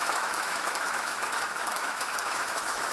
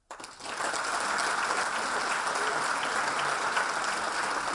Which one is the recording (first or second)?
second